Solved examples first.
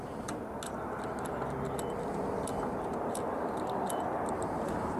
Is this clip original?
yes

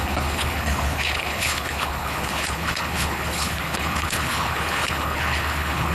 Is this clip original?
no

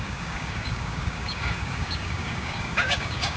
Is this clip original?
no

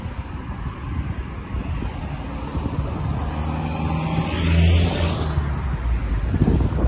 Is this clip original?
yes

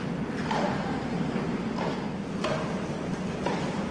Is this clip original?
yes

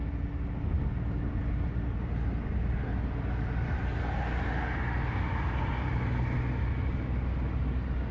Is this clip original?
yes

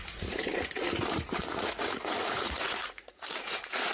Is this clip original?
no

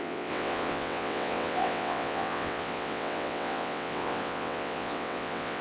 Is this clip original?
no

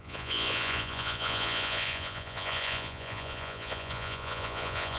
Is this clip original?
no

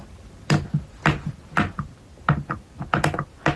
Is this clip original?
yes